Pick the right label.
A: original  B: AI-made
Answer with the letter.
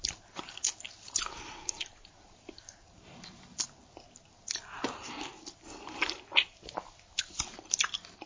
A